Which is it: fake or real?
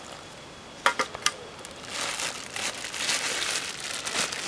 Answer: real